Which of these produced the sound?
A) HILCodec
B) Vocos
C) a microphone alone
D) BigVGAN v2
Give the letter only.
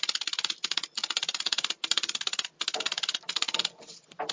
C